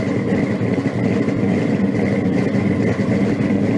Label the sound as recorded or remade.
recorded